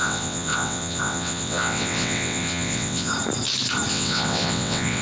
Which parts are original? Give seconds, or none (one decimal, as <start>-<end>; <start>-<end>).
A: 3.1-3.9